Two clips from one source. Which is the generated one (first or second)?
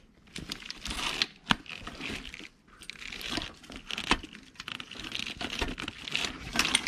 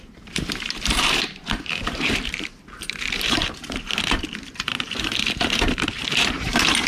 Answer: second